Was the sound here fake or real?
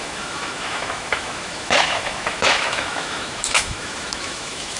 fake